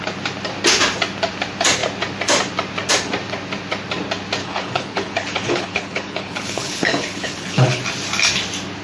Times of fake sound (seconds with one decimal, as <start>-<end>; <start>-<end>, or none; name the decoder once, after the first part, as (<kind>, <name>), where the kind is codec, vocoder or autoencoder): 4.4-7.8 (codec, HILCodec)